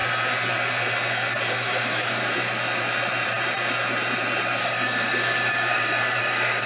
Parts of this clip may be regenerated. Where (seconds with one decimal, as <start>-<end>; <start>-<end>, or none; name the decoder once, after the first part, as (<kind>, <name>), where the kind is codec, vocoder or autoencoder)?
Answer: 1.5-2.2 (codec, DAC); 4.6-6.7